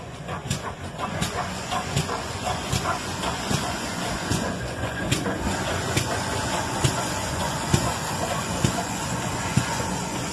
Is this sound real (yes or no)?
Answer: no